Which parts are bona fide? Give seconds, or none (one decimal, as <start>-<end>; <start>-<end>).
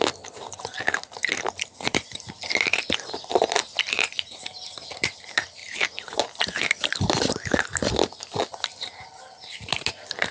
5.6-7.9